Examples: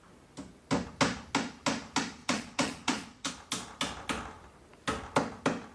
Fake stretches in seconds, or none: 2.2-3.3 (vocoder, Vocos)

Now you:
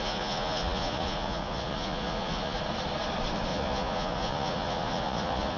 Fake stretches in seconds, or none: 0.0-2.6 (vocoder, Vocos); 3.5-5.6

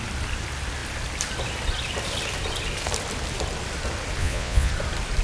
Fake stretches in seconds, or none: 4.2-4.7 (vocoder, Vocos)

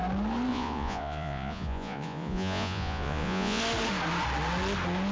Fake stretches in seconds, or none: 0.5-3.6 (vocoder, Vocos)

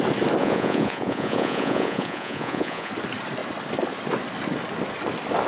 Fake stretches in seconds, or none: 0.4-2.9 (vocoder, Vocos)

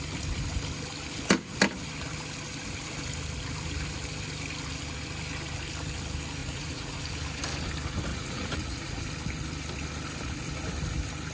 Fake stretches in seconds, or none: 6.4-7.0 (vocoder, Vocos); 8.1-9.0

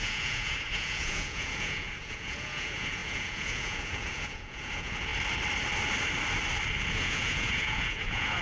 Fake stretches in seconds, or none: 0.0-5.1 (vocoder, Vocos); 6.9-8.4

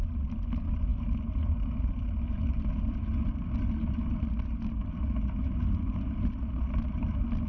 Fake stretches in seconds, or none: none